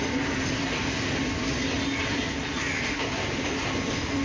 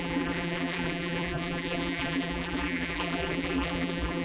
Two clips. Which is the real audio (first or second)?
first